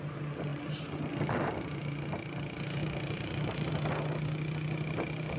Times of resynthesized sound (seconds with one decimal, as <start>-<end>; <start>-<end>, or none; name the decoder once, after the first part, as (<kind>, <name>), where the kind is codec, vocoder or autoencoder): 0.5-1.1 (vocoder, BigVGAN v2); 2.8-3.7